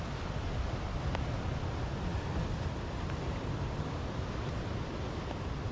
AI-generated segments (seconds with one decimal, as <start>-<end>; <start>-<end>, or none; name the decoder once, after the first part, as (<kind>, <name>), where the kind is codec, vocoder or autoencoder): none